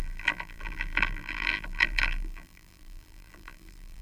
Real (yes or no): no